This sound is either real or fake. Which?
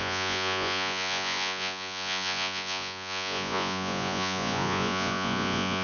fake